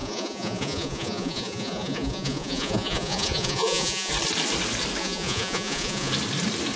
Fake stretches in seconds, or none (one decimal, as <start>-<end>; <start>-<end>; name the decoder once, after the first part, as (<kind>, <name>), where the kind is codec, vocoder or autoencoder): 0.0-4.1 (vocoder, Vocos); 5.0-6.1